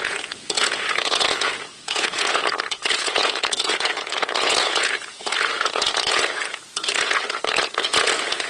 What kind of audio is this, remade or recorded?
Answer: remade